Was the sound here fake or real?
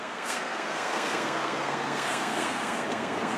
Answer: fake